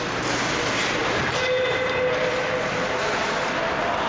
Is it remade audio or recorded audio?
recorded